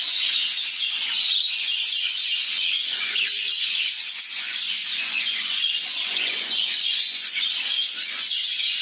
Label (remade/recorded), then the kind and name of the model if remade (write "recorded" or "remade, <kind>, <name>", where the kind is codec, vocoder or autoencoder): remade, vocoder, Vocos